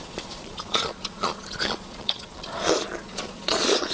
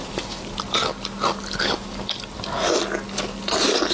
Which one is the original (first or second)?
second